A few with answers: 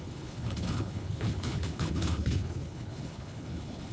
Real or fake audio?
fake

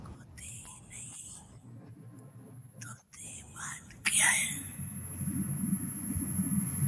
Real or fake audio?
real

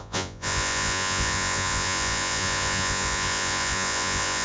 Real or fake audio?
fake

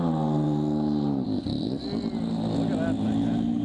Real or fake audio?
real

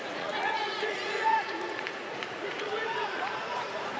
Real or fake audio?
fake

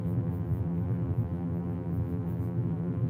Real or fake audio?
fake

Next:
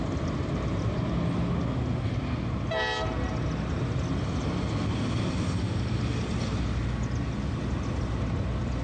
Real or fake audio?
real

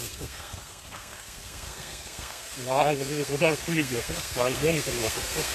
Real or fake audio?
fake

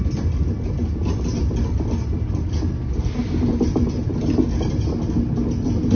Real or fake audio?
real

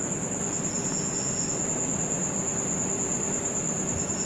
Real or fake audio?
real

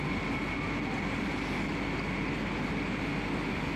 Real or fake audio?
real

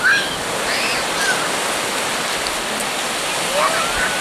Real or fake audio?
real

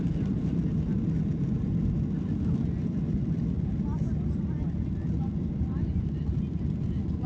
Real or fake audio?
real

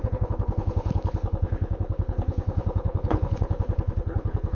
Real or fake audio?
fake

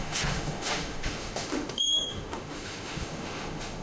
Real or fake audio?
fake